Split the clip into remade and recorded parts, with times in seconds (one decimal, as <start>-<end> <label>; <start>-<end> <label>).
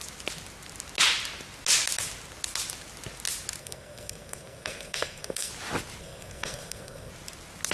0.0-3.6 recorded; 3.6-5.5 remade; 5.5-6.0 recorded; 6.0-7.1 remade; 7.1-7.7 recorded